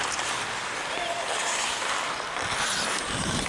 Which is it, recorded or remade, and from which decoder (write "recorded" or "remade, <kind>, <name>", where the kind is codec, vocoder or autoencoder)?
recorded